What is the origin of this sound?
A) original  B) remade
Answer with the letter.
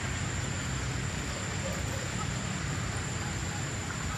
B